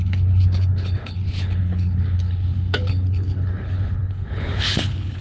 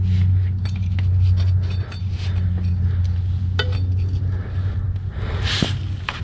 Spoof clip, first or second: first